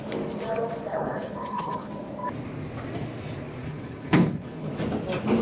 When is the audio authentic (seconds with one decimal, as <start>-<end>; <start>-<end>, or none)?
0.0-0.9; 1.9-3.6; 4.7-5.4